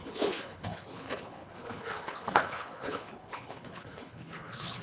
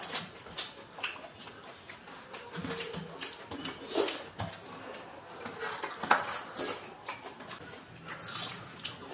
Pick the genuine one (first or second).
second